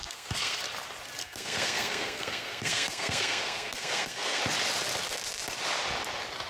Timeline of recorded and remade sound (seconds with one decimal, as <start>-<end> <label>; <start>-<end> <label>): 0.0-0.6 remade; 0.6-1.2 recorded; 1.2-4.4 remade; 4.4-6.5 recorded